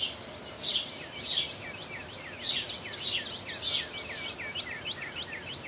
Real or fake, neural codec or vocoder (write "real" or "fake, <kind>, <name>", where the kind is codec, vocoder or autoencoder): real